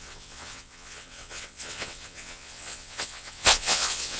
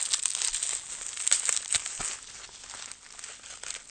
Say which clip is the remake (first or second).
first